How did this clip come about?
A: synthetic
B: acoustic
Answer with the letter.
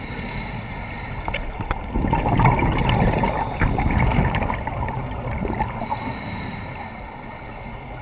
B